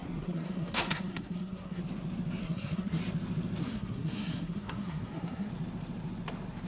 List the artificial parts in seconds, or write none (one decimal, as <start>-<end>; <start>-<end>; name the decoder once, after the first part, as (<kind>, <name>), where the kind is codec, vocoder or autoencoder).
0.0-1.8 (codec, SNAC); 2.4-3.0; 3.6-5.5